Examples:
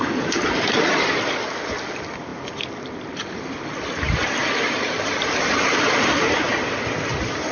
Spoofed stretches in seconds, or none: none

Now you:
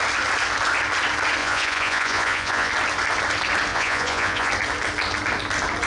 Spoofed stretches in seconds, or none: 1.4-2.7 (vocoder, Vocos); 3.7-4.5

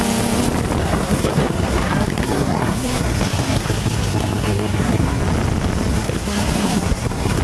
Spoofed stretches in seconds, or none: 0.8-5.2 (codec, SNAC); 5.9-7.4

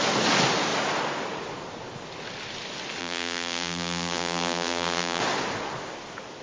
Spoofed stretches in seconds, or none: 3.0-5.2 (vocoder, BigVGAN v2)

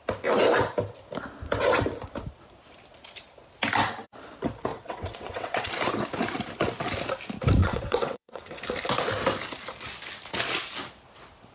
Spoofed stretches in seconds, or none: 4.7-5.7 (vocoder, WaveNeXt); 7.6-8.6

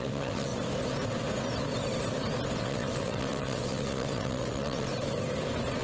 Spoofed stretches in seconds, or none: 0.0-0.5 (vocoder, WaveNeXt); 2.6-4.9